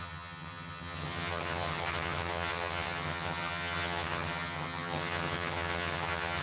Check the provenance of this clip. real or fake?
fake